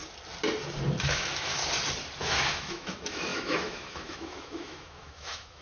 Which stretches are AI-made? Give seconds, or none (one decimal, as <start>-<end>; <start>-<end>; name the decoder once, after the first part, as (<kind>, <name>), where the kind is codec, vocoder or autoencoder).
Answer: 1.0-1.6 (autoencoder, DAC-VAE); 2.2-5.6